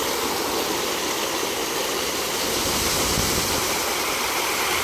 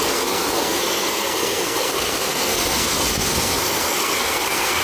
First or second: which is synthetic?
second